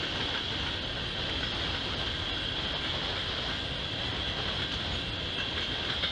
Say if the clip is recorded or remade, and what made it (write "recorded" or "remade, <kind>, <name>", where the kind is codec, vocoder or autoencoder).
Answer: recorded